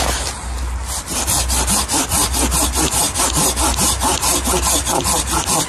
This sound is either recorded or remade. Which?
recorded